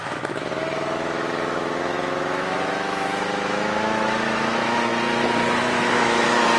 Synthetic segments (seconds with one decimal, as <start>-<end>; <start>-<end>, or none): 0.0-4.9; 5.6-6.6